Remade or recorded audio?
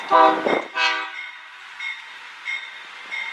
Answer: recorded